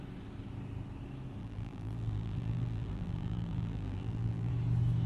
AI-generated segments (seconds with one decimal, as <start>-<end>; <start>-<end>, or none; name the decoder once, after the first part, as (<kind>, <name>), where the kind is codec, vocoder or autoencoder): 1.4-4.5 (vocoder, BigVGAN v2)